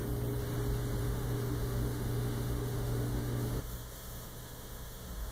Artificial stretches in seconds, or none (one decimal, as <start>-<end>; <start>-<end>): 1.0-5.3